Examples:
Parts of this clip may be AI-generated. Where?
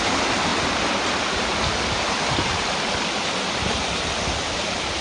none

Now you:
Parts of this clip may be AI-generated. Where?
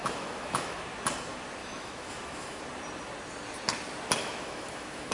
0.0-0.8; 1.6-2.6; 4.2-5.1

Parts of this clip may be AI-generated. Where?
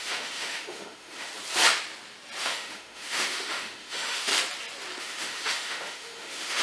0.0-1.3; 2.4-4.3; 5.0-6.6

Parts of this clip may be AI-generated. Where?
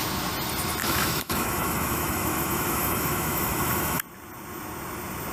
0.8-4.0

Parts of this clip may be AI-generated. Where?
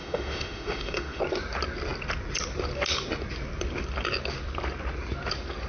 0.0-1.2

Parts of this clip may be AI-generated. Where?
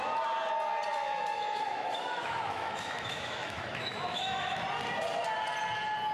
0.9-4.6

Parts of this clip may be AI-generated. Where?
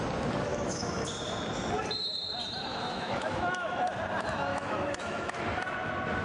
0.5-1.1; 2.7-3.8; 4.5-5.4